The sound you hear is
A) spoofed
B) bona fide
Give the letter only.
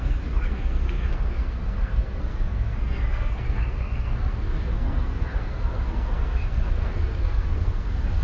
A